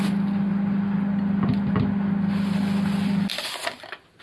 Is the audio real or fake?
real